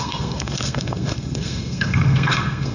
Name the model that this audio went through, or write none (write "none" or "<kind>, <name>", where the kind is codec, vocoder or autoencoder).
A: codec, SNAC